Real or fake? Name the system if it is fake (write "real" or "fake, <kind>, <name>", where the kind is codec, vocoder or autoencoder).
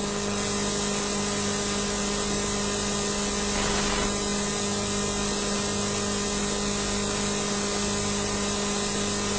real